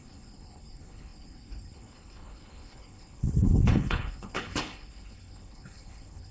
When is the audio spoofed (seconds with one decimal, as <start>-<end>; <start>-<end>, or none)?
0.0-6.3